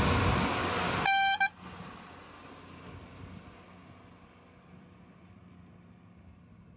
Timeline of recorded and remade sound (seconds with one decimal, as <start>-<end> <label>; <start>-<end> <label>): 0.0-6.8 recorded